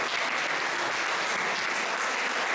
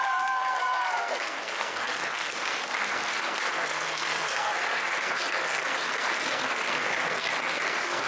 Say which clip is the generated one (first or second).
second